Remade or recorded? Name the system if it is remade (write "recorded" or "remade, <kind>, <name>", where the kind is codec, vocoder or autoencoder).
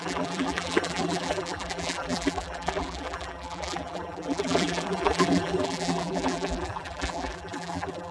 remade, vocoder, BigVGAN v2